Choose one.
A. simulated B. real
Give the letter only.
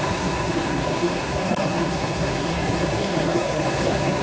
A